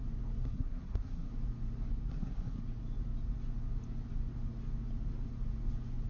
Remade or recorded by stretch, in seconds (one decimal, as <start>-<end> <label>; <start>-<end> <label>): 0.0-0.4 recorded; 0.4-1.3 remade; 1.3-2.1 recorded; 2.1-2.6 remade; 2.6-6.1 recorded